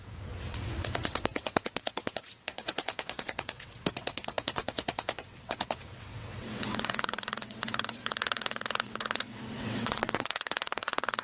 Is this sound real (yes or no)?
no